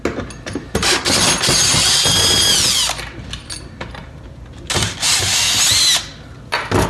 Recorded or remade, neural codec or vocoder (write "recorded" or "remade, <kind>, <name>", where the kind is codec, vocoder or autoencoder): recorded